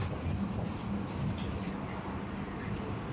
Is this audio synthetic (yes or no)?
no